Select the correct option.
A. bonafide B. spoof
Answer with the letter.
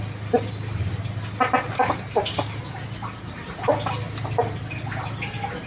A